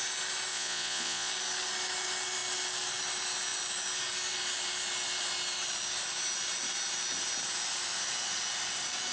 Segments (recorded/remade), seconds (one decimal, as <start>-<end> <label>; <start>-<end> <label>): 0.0-0.5 recorded; 0.5-1.3 remade; 1.3-9.1 recorded